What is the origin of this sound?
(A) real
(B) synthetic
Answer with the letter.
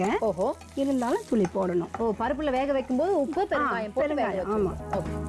A